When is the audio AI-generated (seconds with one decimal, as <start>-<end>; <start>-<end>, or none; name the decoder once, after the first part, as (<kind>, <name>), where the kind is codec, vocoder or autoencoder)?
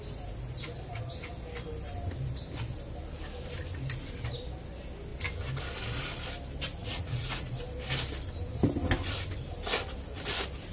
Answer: 6.8-7.5 (vocoder, Vocos)